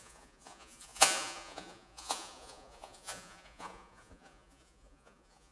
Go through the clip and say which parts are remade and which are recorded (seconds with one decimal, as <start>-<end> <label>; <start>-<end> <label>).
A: 0.0-5.5 remade